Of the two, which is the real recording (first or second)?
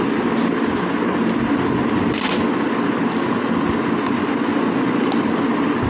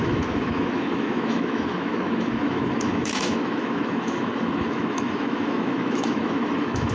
first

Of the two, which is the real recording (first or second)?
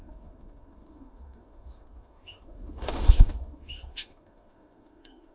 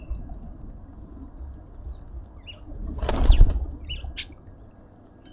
second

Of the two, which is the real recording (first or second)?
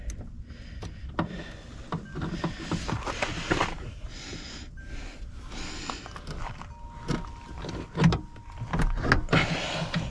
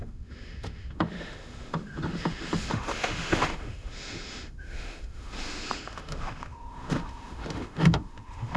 first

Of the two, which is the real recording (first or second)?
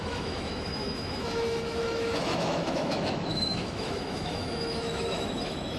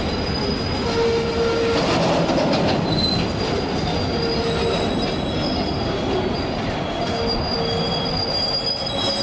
second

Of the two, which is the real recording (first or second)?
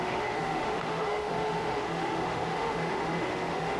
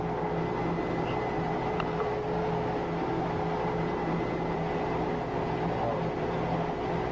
second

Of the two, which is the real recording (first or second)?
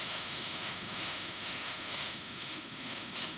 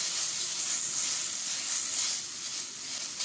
second